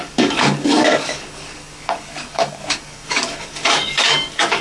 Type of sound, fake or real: fake